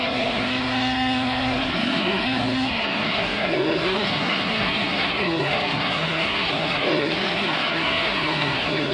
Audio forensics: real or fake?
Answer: fake